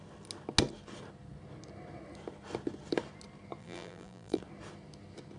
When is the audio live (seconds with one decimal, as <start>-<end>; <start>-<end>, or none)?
0.0-3.6; 4.4-5.4